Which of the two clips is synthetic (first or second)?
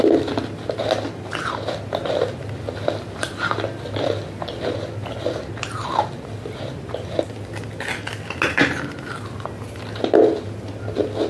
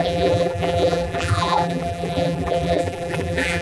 second